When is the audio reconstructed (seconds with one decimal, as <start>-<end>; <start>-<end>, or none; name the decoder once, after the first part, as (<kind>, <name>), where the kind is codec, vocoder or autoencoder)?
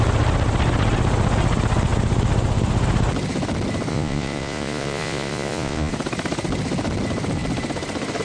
3.9-5.9 (vocoder, Vocos)